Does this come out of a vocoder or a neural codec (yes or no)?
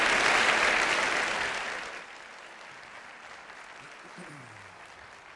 no